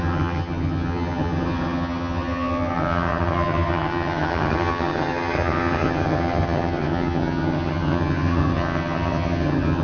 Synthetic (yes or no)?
yes